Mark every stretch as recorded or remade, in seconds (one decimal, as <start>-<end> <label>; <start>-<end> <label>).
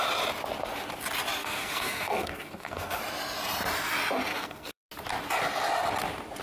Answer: 0.0-1.4 recorded; 1.4-3.0 remade; 3.0-4.3 recorded; 4.3-4.9 remade; 4.9-6.4 recorded